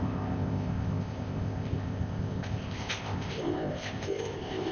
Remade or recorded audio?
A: remade